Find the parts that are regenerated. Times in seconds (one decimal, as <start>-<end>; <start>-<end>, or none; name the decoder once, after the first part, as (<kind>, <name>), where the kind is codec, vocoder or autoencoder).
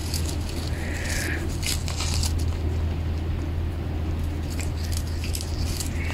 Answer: none